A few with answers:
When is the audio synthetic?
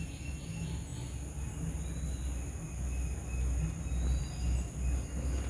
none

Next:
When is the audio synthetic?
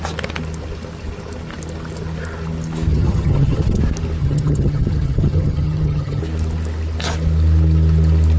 2.9-3.8; 4.2-6.2